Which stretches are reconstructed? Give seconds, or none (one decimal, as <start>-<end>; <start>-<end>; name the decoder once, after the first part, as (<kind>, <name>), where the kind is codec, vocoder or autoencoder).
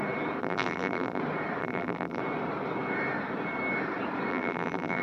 0.4-1.2 (vocoder, BigVGAN v2); 1.6-2.2; 4.3-5.0